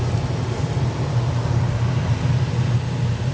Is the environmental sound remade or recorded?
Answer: recorded